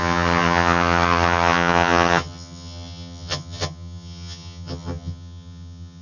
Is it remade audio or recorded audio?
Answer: remade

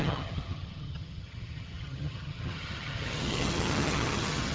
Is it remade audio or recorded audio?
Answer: remade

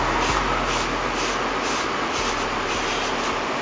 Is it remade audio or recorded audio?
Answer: recorded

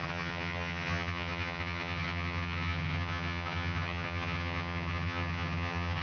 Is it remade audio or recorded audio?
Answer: remade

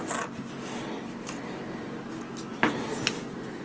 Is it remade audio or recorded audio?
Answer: recorded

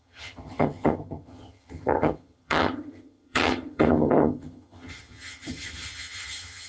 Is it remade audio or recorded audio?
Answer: remade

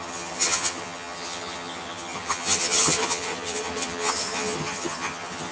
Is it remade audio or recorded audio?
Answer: remade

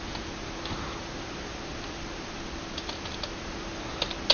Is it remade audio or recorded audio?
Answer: recorded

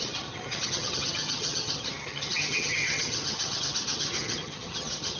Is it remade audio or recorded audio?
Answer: remade